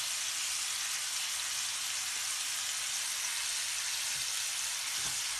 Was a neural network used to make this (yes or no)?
no